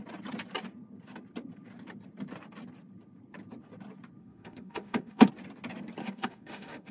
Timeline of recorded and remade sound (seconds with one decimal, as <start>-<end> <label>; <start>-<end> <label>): 0.0-4.2 recorded; 4.2-5.3 remade; 5.3-6.0 recorded; 6.0-6.9 remade